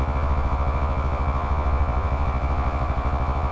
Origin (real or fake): fake